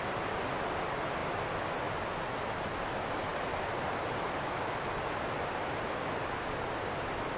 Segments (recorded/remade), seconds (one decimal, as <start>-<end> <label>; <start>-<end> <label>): 0.0-7.4 recorded